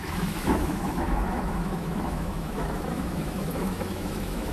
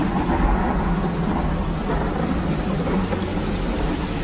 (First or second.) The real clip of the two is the second